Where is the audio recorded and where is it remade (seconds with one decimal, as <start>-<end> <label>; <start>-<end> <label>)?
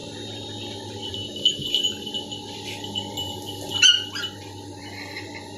0.0-5.6 recorded